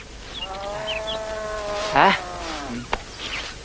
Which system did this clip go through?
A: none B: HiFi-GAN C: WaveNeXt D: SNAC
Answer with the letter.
A